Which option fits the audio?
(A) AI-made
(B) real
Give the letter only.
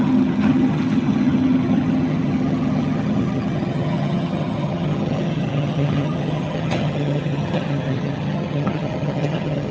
A